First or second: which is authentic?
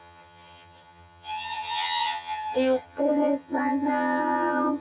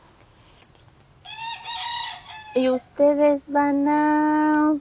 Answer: second